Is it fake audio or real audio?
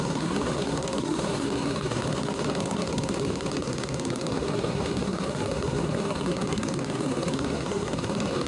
fake